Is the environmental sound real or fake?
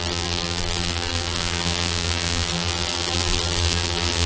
fake